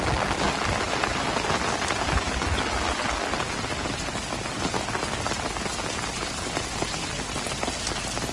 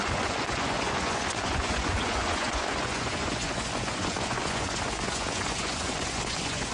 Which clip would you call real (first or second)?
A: first